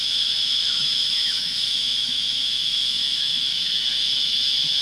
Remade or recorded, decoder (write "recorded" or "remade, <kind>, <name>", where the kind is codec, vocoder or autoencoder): remade, autoencoder, DAC-VAE